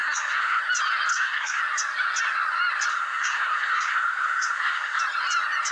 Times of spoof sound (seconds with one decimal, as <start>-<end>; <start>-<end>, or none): 0.0-0.6; 1.1-1.6; 2.9-5.0